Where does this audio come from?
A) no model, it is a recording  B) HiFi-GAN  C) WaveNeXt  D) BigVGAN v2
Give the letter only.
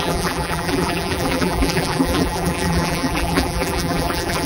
D